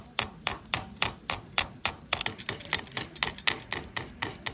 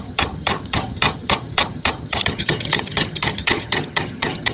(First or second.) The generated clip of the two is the second